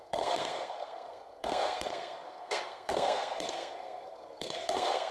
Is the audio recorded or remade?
remade